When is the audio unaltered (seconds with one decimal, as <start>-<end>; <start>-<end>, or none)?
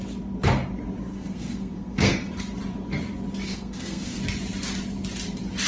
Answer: 0.0-1.1; 2.3-3.5; 4.2-5.7